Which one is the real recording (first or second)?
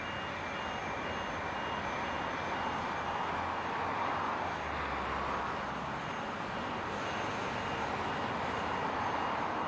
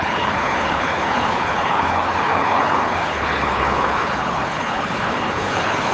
first